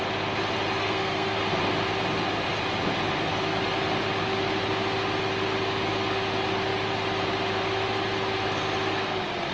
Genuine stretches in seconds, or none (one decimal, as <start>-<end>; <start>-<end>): 0.0-0.8; 1.4-9.5